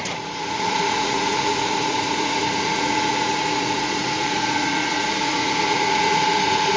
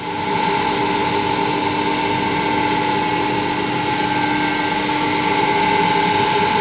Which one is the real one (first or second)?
second